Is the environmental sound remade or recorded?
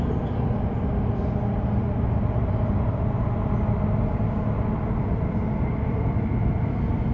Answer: recorded